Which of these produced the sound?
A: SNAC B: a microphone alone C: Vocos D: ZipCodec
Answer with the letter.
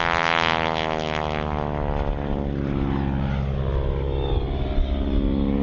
B